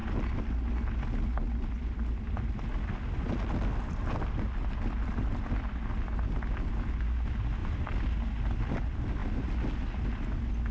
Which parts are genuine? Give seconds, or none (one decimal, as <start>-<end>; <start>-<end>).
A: 0.0-10.7